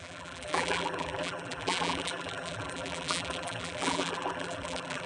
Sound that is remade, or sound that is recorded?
remade